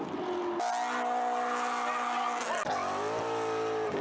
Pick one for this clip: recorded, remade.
recorded